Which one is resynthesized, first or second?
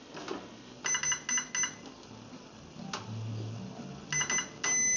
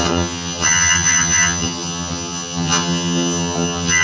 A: second